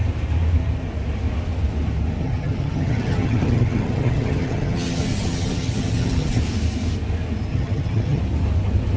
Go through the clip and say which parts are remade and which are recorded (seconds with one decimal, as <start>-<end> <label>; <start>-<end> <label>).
0.0-2.2 recorded; 2.2-6.4 remade; 6.4-7.5 recorded; 7.5-8.2 remade; 8.2-9.0 recorded